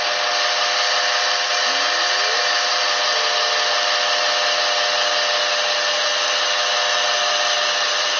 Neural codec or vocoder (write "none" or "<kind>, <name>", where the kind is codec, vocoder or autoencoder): none